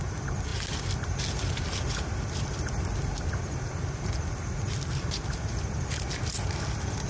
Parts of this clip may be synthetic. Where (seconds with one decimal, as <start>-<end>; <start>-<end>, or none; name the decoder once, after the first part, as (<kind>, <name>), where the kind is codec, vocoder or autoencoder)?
none